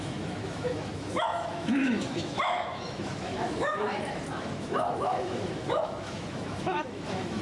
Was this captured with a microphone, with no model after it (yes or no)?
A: no